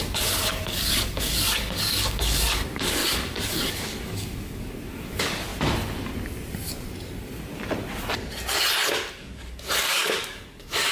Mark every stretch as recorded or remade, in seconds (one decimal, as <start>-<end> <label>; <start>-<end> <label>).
0.0-5.5 remade; 5.5-9.1 recorded; 9.1-10.9 remade